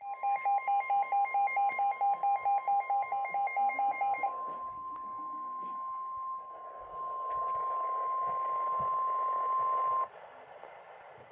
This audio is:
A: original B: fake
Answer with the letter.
A